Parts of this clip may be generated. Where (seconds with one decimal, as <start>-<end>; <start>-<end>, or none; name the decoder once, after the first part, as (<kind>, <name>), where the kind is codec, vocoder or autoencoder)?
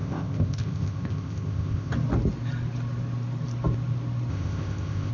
0.0-1.9 (codec, ZipCodec); 4.3-5.1